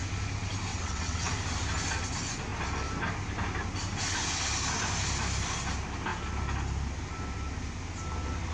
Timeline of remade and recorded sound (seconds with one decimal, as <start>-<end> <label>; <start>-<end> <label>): 0.0-0.7 recorded; 0.7-1.3 remade; 1.3-8.5 recorded